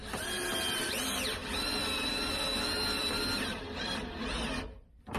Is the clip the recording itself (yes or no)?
yes